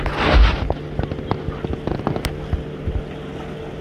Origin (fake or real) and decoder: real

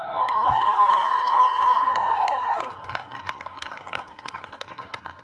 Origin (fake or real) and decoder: fake, codec, SNAC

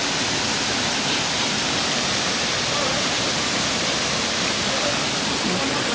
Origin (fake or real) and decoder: real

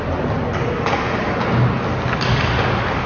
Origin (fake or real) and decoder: real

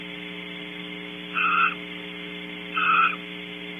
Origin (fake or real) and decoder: real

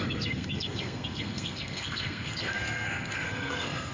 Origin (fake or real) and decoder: fake, codec, SNAC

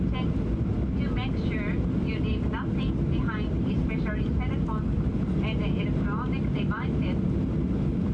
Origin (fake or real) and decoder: real